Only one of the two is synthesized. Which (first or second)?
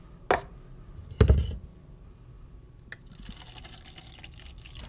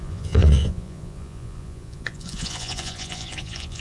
second